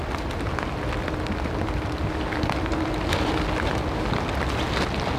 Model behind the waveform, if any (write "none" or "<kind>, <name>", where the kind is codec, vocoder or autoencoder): none